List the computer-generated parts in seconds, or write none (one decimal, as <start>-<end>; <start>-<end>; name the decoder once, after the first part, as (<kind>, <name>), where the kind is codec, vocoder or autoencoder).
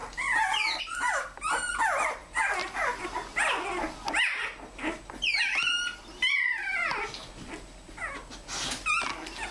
none